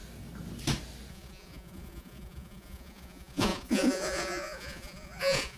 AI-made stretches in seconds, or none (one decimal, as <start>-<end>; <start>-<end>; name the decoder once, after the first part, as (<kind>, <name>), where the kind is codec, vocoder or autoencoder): 1.1-5.6 (vocoder, Vocos)